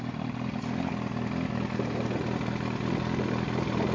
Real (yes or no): yes